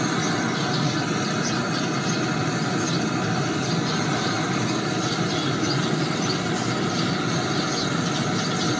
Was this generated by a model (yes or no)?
no